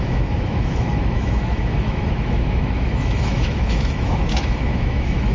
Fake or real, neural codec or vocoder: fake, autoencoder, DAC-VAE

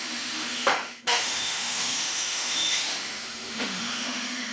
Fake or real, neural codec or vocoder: fake, autoencoder, DAC-VAE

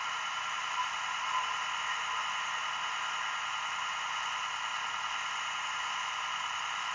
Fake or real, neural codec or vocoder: real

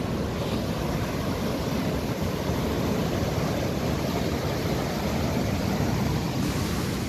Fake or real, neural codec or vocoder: real